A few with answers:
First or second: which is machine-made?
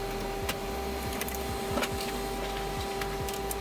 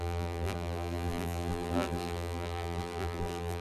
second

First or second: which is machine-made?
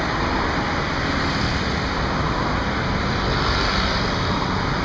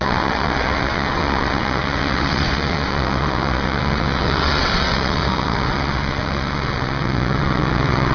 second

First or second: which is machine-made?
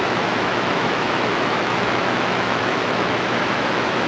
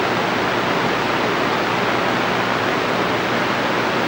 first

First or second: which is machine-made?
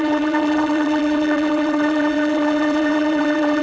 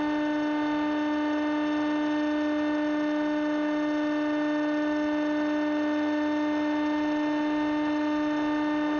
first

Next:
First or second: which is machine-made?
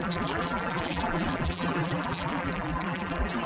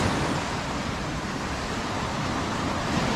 first